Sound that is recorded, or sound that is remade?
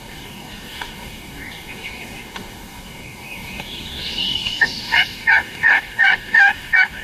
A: remade